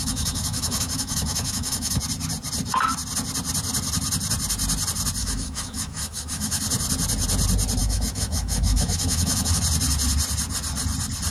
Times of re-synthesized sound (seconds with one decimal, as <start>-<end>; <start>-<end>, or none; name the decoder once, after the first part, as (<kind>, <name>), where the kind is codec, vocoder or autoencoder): 0.0-2.0 (autoencoder, DAC-VAE); 5.2-6.6; 7.8-9.6